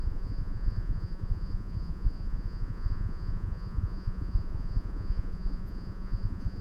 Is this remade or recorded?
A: remade